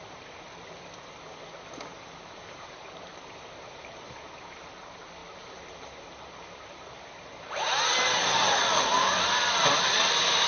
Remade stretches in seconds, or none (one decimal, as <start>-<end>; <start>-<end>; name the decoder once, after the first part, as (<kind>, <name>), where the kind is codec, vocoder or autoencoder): none